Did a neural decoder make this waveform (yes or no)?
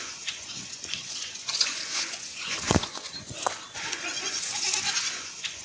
yes